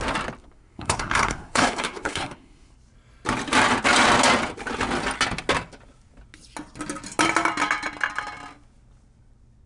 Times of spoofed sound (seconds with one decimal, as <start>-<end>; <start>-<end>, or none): 0.4-2.7